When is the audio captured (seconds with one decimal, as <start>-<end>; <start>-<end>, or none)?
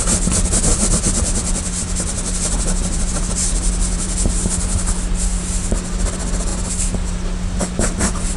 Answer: 0.0-0.7; 4.6-6.5; 7.1-8.4